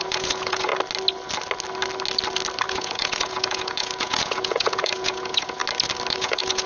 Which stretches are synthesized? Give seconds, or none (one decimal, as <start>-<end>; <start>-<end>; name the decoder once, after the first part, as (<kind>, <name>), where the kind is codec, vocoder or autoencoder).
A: 0.0-0.7 (vocoder, Vocos); 2.7-5.6; 6.1-6.7